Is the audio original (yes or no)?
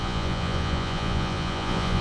no